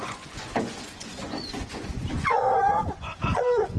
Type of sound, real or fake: fake